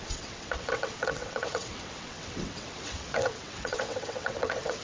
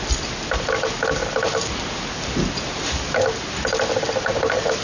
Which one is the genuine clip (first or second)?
second